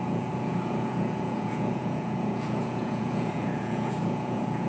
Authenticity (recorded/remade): remade